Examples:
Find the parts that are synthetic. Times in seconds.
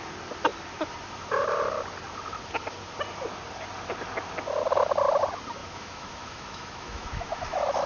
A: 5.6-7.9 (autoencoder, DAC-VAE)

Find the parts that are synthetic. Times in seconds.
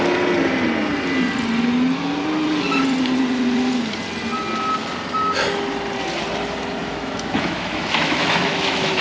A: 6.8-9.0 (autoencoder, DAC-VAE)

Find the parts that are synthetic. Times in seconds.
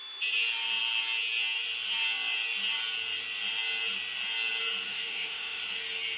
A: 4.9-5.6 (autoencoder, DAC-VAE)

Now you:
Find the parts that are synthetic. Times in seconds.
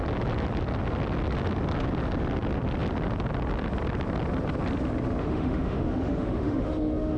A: 5.2-7.2 (autoencoder, DAC-VAE)